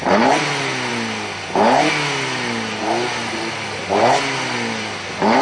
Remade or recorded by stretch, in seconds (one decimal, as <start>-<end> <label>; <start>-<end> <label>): 0.0-5.4 recorded